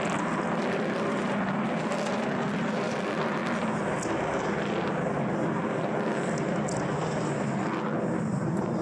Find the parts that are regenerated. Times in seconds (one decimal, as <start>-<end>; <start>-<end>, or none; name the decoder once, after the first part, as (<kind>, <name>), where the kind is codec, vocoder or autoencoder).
none